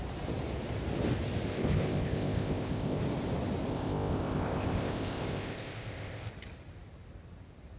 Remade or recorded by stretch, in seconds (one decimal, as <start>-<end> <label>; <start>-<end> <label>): 0.0-1.5 recorded; 1.5-3.0 remade; 3.0-3.7 recorded; 3.7-6.3 remade; 6.3-7.8 recorded

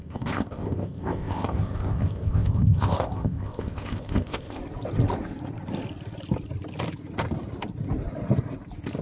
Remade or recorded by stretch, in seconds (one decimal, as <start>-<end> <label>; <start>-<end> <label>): 0.0-4.6 remade; 4.6-9.0 recorded

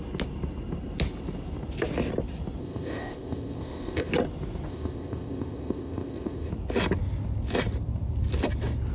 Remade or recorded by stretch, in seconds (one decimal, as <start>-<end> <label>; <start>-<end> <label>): 0.0-2.6 recorded; 2.6-4.1 remade; 4.1-4.7 recorded; 4.7-6.5 remade; 6.5-8.9 recorded

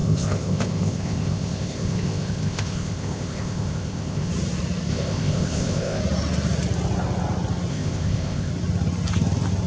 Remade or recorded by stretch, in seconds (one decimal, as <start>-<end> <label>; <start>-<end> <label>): 0.0-4.3 remade; 4.3-4.9 recorded; 4.9-6.0 remade; 6.0-7.7 recorded; 7.7-8.5 remade; 8.5-9.7 recorded

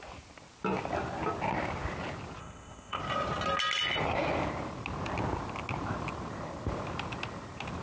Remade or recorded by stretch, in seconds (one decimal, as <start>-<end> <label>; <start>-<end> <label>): 0.0-2.4 recorded; 2.4-3.0 remade; 3.0-7.8 recorded

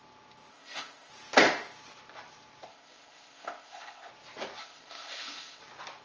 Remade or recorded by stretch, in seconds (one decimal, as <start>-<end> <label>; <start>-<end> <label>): 0.0-0.5 recorded; 0.5-1.1 remade; 1.1-2.7 recorded; 2.7-4.1 remade; 4.1-4.6 recorded; 4.6-5.6 remade; 5.6-6.0 recorded

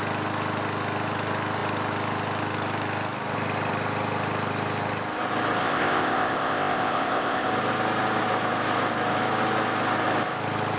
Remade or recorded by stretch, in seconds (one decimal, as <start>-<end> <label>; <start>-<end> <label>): 0.0-5.6 recorded; 5.6-7.5 remade; 7.5-10.8 recorded

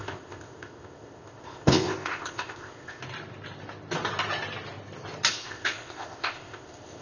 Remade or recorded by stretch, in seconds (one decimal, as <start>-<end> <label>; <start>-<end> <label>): 0.0-3.0 remade; 3.0-5.3 recorded; 5.3-7.0 remade